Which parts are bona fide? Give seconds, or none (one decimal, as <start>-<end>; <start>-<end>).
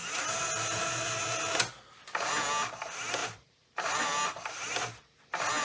1.6-3.2; 5.0-5.6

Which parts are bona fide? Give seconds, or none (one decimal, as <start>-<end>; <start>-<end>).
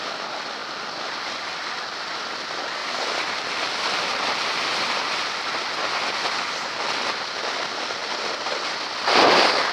0.0-2.8; 7.3-8.0; 8.7-9.7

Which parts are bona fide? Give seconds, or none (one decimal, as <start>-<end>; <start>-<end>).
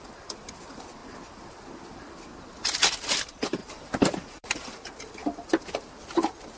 1.0-3.1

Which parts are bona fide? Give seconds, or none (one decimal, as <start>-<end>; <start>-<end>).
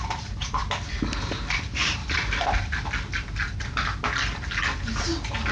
0.6-1.5; 2.0-5.5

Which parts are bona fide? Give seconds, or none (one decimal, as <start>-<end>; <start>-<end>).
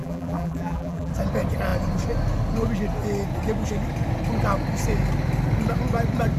1.1-6.4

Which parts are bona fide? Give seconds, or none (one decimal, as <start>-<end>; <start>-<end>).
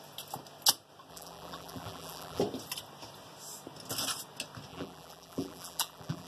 0.0-1.1; 2.4-4.7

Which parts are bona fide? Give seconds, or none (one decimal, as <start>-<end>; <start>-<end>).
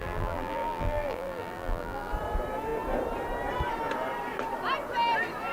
2.1-5.5